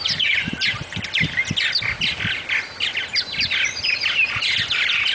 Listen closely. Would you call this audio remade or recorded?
recorded